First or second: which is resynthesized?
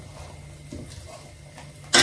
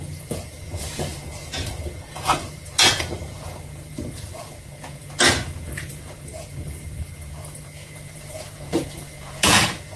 second